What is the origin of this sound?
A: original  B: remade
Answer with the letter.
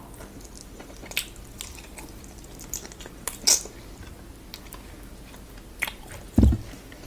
A